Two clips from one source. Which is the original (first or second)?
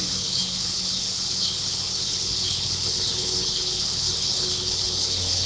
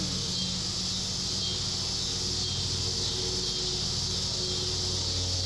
second